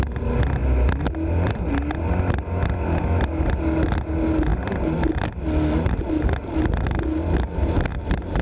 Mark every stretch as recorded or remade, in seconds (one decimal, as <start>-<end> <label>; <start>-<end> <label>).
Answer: 0.0-8.4 recorded

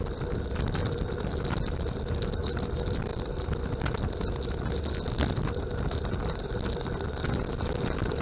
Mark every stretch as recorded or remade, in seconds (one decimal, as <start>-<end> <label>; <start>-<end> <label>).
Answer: 0.0-8.2 recorded

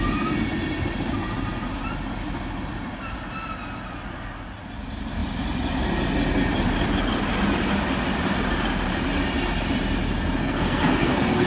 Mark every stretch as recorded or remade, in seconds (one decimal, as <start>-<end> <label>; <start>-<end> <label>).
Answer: 0.0-10.4 recorded; 10.4-11.5 remade

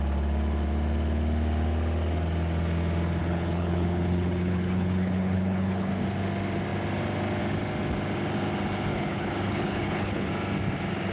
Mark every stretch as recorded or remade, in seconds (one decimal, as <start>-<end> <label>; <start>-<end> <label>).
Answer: 0.0-3.2 recorded; 3.2-5.9 remade; 5.9-8.9 recorded; 8.9-10.3 remade; 10.3-11.1 recorded